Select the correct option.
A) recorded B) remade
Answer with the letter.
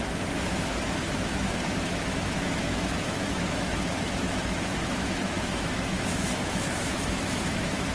B